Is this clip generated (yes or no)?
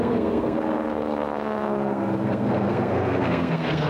yes